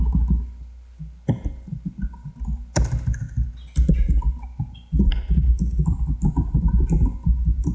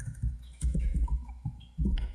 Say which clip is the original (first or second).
first